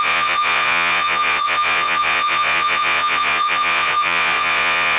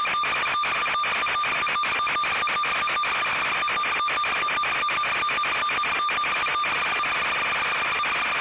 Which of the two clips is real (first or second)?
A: second